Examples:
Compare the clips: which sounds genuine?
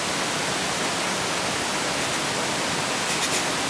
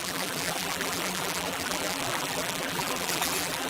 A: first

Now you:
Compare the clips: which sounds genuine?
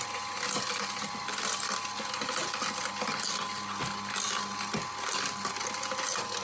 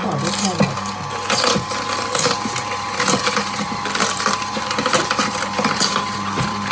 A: first